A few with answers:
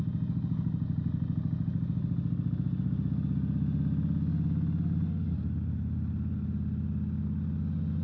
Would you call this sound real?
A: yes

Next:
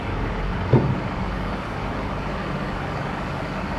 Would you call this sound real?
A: no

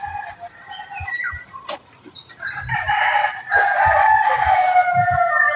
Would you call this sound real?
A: yes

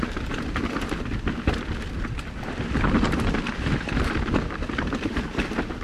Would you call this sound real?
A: yes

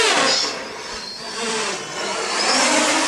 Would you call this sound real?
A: yes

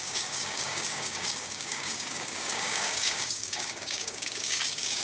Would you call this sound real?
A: no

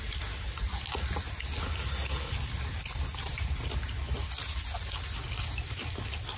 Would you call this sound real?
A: yes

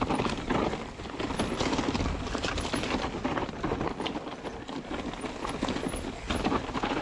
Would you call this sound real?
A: yes